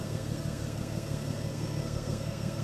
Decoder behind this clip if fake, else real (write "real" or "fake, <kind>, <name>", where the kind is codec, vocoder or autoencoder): fake, codec, SNAC